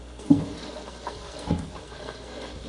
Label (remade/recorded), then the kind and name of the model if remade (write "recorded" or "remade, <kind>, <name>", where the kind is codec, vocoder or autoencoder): remade, codec, SNAC